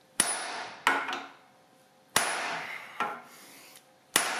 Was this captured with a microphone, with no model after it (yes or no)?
yes